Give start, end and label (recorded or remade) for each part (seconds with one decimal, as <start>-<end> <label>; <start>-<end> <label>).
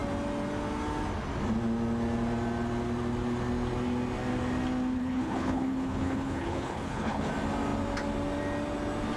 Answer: 0.0-5.0 recorded; 5.0-7.3 remade; 7.3-9.2 recorded